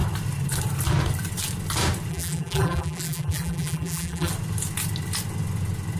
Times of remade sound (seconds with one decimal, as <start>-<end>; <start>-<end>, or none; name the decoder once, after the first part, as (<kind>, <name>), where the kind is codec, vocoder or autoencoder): 2.1-4.3 (vocoder, BigVGAN v2)